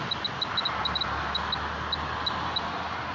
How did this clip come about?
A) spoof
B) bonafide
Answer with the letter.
B